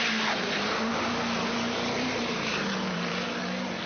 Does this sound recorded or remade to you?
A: remade